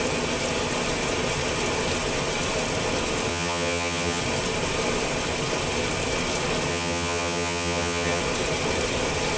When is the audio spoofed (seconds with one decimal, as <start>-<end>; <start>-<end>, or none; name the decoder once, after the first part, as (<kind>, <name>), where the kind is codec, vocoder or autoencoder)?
3.3-4.2 (vocoder, HiFi-GAN); 6.7-8.2